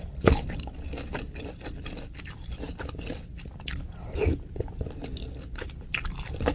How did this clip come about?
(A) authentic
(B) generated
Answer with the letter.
A